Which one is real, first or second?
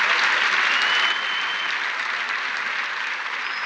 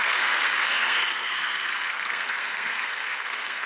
first